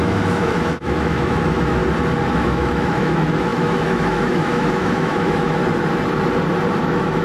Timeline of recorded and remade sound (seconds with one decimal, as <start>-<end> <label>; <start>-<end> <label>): 0.0-1.8 remade; 1.8-2.3 recorded; 2.3-5.6 remade; 5.6-6.8 recorded; 6.8-7.2 remade